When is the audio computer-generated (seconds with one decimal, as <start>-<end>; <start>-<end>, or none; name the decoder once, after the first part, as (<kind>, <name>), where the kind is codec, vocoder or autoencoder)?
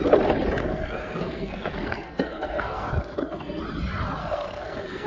0.6-3.6 (codec, SNAC); 4.2-5.1